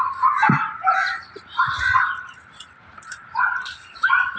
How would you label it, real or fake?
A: fake